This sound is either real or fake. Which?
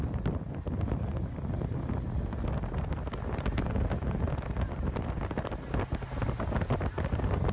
real